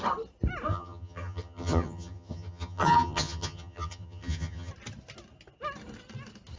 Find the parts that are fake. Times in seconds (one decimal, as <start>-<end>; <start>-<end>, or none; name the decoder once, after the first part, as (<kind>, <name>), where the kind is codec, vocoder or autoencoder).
0.7-4.7 (vocoder, HiFi-GAN)